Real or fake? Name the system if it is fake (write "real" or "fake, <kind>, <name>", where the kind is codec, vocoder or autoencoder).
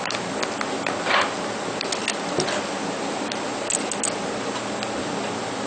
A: real